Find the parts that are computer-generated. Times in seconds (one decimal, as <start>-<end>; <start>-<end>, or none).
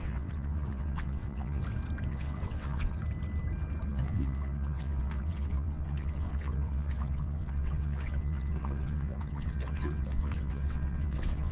0.0-1.6; 2.1-3.0; 3.9-11.5